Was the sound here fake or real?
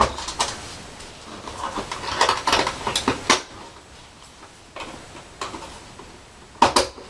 real